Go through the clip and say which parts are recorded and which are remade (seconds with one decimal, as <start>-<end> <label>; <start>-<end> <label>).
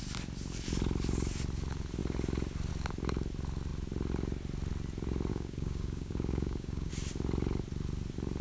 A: 0.0-5.3 recorded; 5.3-6.9 remade; 6.9-8.4 recorded